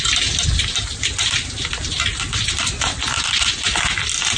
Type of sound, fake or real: real